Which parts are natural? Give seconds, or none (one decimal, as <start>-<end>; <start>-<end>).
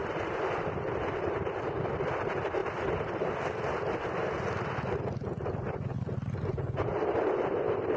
0.0-8.0